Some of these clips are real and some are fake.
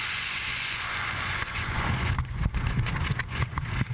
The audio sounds fake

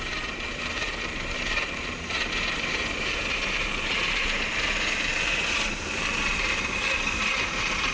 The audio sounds fake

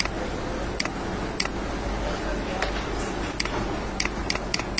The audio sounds real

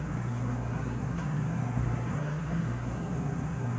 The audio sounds fake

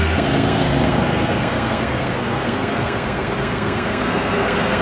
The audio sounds fake